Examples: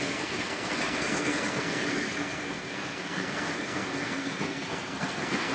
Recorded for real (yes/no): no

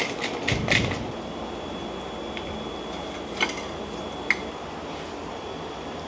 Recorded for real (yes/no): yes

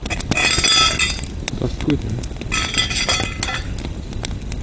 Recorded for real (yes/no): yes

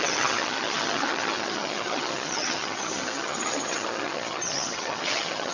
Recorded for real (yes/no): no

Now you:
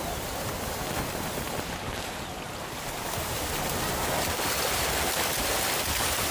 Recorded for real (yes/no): yes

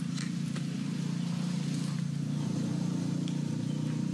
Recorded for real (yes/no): yes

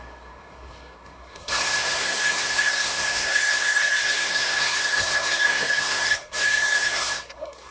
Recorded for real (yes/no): no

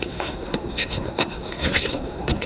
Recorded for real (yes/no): no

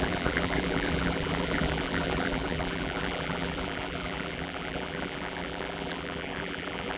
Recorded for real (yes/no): no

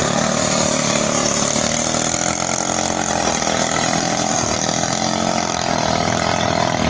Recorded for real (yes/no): yes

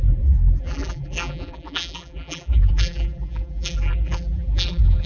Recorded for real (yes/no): no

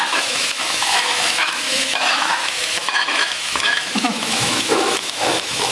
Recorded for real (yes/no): no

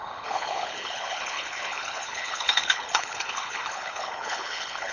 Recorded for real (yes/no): no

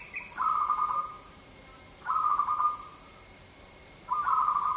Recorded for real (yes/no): no